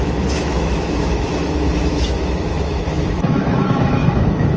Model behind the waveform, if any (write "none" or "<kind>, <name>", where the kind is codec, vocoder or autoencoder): autoencoder, DAC-VAE